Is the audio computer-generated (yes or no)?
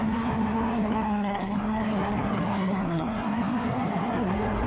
yes